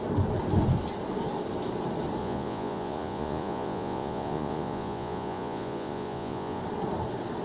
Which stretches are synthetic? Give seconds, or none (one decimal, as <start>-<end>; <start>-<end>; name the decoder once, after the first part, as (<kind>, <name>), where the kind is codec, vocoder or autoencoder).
2.2-6.6 (vocoder, Vocos)